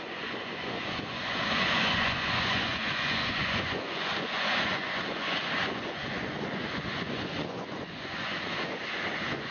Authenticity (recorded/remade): remade